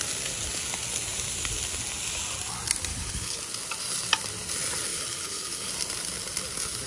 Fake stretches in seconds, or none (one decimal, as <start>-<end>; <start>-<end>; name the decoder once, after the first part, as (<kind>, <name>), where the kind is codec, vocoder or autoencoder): 2.9-3.4 (codec, HILCodec); 4.9-5.7